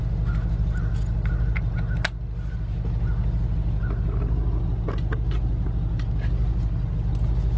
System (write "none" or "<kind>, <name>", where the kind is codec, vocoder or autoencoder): none